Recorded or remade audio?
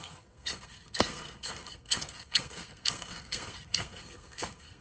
remade